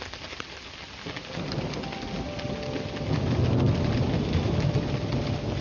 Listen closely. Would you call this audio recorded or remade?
recorded